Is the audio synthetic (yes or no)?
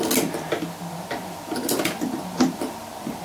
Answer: no